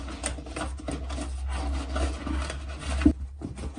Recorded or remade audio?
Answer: recorded